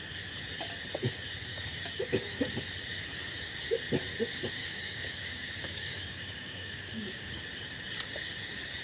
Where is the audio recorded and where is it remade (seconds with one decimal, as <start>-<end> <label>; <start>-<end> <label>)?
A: 0.0-1.5 recorded; 1.5-2.5 remade; 2.5-4.6 recorded; 4.6-7.4 remade; 7.4-8.8 recorded